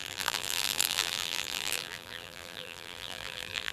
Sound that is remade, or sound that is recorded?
remade